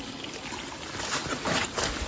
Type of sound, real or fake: fake